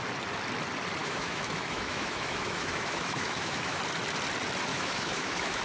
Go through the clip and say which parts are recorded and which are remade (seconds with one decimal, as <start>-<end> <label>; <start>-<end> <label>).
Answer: 0.0-1.0 recorded; 1.0-3.8 remade; 3.8-4.7 recorded; 4.7-5.6 remade